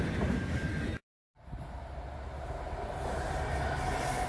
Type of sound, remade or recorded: recorded